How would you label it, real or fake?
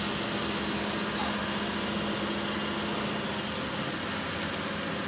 real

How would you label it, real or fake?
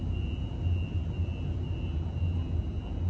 real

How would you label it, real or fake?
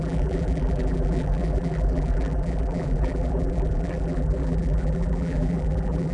fake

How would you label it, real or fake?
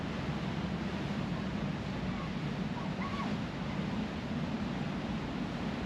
real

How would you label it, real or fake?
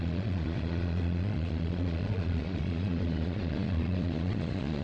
fake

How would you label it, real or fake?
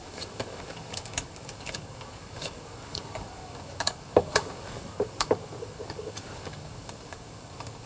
fake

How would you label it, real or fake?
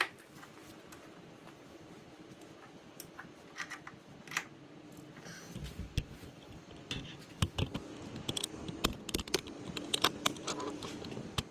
real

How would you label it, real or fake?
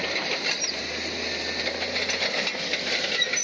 real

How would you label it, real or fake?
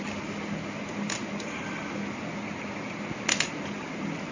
real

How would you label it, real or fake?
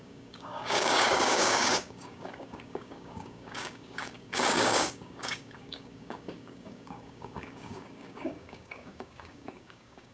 fake